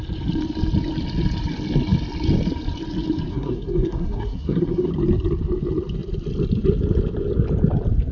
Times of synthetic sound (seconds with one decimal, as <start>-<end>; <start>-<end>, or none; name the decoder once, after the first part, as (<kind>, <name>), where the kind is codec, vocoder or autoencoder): 3.3-4.9 (codec, SNAC)